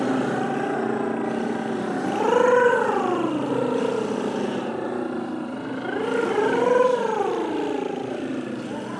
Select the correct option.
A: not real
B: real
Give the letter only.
B